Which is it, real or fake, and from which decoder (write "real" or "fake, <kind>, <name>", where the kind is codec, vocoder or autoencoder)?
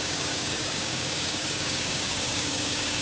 fake, codec, DAC